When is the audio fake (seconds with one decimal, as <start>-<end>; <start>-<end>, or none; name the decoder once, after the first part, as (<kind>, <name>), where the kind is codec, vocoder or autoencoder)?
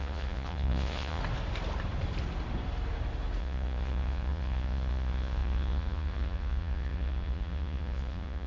0.0-1.2 (vocoder, Vocos); 3.4-8.5